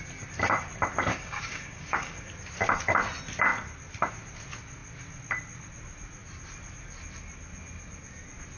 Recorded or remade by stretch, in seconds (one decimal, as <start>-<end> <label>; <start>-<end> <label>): 0.0-1.1 recorded; 1.1-2.3 remade; 2.3-8.6 recorded